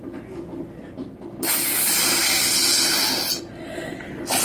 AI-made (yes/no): no